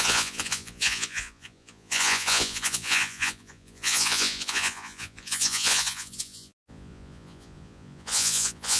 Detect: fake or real fake